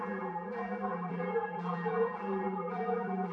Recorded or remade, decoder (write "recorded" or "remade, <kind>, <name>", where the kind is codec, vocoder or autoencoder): remade, vocoder, BigVGAN v2